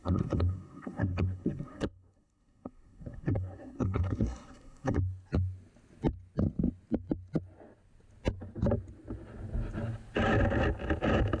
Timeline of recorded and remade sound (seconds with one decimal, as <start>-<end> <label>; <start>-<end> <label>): 0.0-5.0 remade; 5.0-11.4 recorded